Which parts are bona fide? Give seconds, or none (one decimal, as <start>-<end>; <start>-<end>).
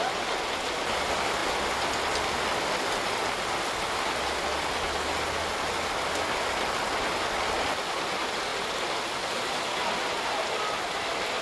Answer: 0.0-11.4